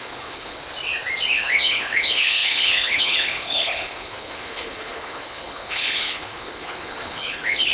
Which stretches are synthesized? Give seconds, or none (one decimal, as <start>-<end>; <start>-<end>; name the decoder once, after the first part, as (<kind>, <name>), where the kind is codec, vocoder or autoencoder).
0.0-0.6 (codec, HILCodec); 1.3-7.7